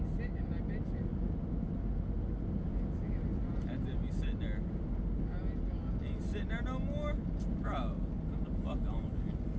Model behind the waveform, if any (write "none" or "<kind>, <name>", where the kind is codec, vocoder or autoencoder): none